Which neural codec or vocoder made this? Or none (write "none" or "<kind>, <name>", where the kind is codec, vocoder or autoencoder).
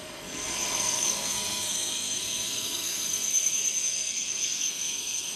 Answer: codec, SNAC